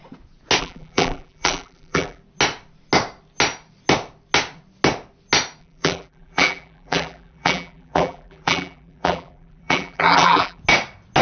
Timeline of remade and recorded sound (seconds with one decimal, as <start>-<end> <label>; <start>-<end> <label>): 0.0-0.6 recorded; 0.6-2.2 remade; 2.2-5.6 recorded; 5.6-10.6 remade; 10.6-11.2 recorded